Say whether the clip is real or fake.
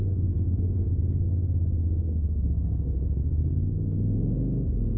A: fake